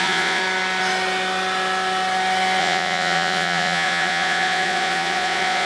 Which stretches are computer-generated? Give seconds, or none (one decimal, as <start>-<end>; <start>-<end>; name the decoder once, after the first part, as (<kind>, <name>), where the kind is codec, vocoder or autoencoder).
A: 0.0-0.4 (vocoder, Vocos); 2.6-5.7